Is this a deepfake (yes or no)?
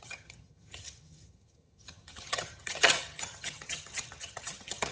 yes